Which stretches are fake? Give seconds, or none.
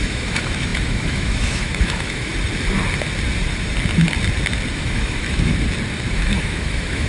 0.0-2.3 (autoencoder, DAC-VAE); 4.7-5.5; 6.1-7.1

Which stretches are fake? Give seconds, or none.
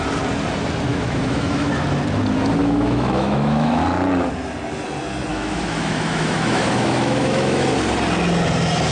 0.9-1.7 (autoencoder, DAC-VAE); 2.6-3.8; 5.3-7.7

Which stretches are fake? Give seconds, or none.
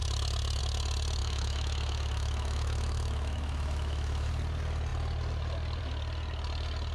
1.2-4.3 (autoencoder, DAC-VAE)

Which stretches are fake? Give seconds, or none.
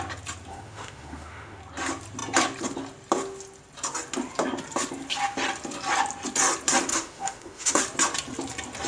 0.5-1.6 (autoencoder, DAC-VAE); 6.9-7.8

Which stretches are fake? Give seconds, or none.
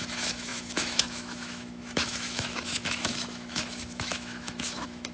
0.0-5.1 (autoencoder, DAC-VAE)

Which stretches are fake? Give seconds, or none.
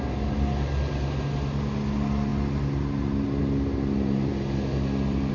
none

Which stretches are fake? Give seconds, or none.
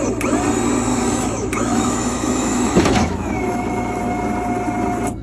0.9-4.0 (autoencoder, DAC-VAE)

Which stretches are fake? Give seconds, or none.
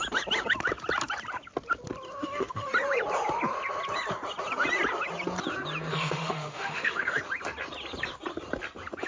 2.2-2.7 (autoencoder, DAC-VAE); 5.9-7.2